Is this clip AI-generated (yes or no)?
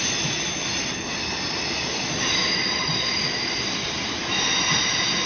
no